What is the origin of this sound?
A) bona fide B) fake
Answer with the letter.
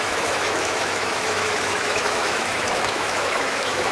B